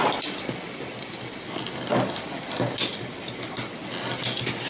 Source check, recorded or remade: recorded